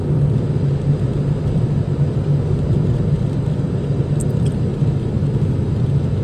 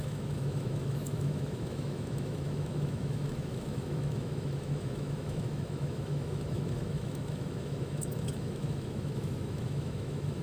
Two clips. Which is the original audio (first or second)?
first